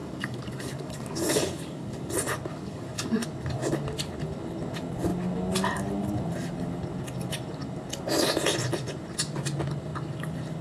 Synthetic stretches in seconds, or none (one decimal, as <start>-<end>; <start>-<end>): 0.0-2.1; 2.5-3.1